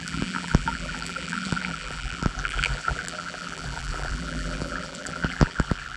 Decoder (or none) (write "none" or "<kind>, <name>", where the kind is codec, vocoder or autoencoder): vocoder, BigVGAN v2